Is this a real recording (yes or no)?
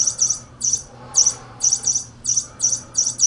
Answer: no